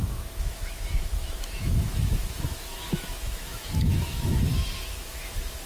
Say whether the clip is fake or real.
fake